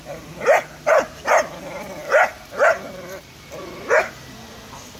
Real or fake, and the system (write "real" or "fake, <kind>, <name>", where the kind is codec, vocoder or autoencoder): fake, vocoder, BigVGAN v2